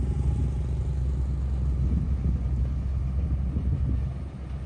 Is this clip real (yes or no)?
yes